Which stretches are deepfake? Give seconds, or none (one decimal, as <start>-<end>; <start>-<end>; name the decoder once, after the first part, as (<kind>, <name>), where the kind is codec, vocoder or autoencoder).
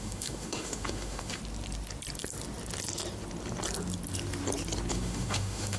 0.0-1.4 (autoencoder, DAC-VAE); 4.9-5.8